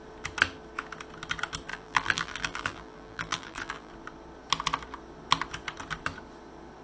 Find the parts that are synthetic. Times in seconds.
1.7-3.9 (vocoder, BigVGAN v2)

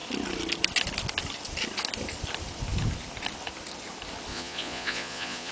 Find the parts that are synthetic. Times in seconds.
4.3-5.5 (vocoder, Vocos)

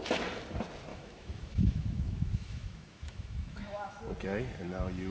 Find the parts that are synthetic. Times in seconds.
0.9-4.0 (autoencoder, DAC-VAE)

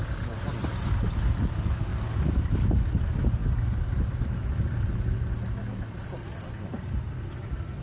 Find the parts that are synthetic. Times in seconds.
none

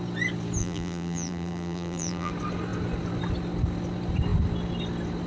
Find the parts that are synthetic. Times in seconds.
0.6-2.3 (vocoder, BigVGAN v2)

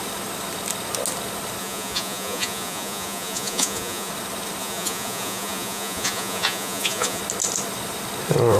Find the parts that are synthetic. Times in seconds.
1.6-4.1 (vocoder, Vocos); 4.6-7.2

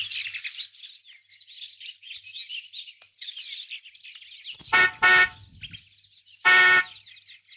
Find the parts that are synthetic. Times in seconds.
none